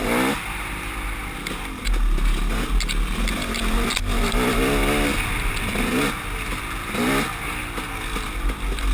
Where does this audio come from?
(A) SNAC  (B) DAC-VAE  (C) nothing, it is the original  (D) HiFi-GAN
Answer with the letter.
C